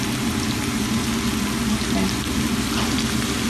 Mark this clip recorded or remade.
recorded